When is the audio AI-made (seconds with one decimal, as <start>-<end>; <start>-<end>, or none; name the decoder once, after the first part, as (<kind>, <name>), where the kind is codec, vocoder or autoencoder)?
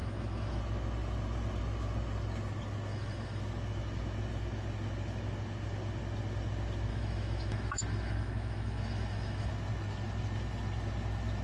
0.0-0.6 (autoencoder, DAC-VAE); 2.9-3.4; 6.9-9.5